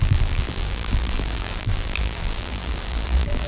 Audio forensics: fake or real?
fake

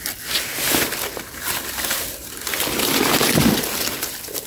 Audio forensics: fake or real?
real